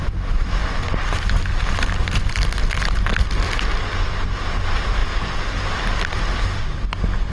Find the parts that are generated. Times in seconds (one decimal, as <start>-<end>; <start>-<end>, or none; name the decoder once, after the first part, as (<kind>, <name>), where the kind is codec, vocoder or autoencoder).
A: none